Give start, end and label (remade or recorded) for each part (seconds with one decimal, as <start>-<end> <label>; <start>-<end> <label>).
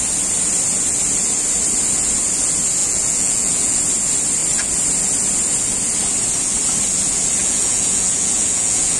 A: 0.0-2.8 recorded; 2.8-3.8 remade; 3.8-7.4 recorded; 7.4-9.0 remade